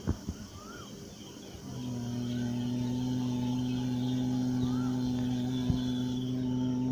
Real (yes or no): yes